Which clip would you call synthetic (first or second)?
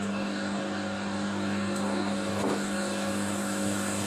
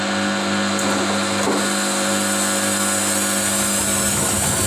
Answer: first